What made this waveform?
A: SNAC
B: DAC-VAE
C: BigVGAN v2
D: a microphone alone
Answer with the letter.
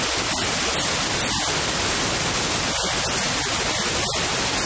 D